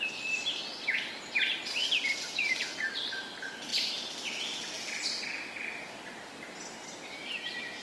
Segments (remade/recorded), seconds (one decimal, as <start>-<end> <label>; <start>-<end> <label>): 0.0-7.8 recorded